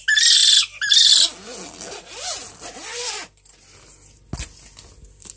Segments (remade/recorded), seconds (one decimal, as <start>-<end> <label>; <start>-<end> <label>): 0.0-5.4 recorded